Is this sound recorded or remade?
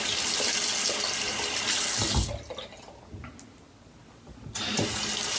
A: recorded